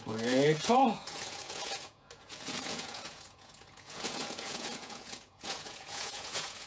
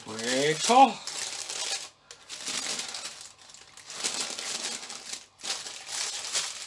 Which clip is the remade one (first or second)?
first